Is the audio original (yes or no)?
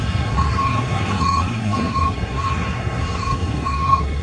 no